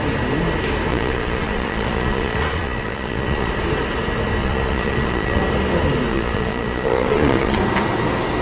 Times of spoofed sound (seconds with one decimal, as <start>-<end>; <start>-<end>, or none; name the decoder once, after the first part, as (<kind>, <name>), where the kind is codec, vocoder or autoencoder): 0.9-3.5 (vocoder, Vocos); 4.4-5.4; 6.1-7.6